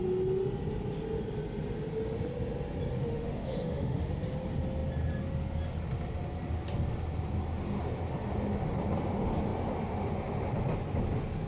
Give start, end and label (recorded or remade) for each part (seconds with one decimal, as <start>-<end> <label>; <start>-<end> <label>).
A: 0.0-3.0 recorded; 3.0-4.1 remade; 4.1-11.5 recorded